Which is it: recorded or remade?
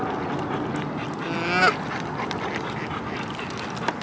recorded